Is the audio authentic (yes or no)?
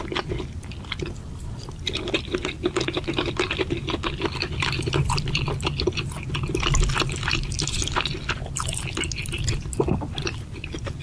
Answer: yes